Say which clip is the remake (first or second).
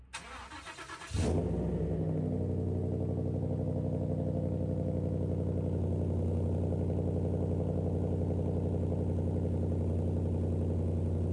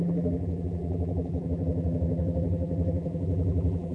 second